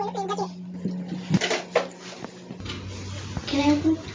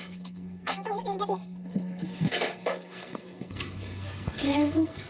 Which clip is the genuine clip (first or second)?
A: first